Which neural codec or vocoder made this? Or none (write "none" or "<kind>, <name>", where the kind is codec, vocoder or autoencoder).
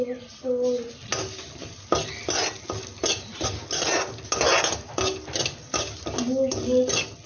none